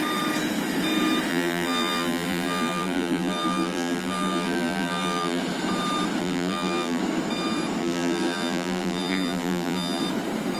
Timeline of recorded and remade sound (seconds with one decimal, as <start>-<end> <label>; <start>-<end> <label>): 0.0-1.3 recorded; 1.3-5.4 remade; 5.4-6.2 recorded; 6.2-7.0 remade; 7.0-7.8 recorded; 7.8-10.0 remade; 10.0-10.6 recorded